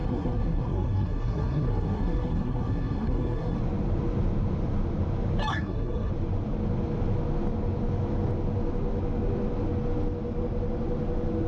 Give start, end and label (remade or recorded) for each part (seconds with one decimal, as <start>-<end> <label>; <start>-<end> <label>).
0.0-3.6 remade; 3.6-5.5 recorded; 5.5-6.1 remade; 6.1-11.5 recorded